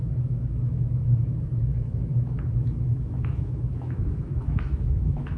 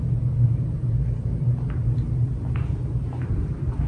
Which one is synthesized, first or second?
first